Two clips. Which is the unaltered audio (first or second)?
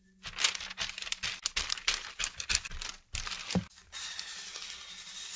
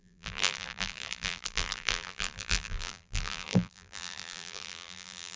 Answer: first